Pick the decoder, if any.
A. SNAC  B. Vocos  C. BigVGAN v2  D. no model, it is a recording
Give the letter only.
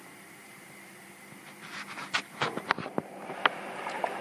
C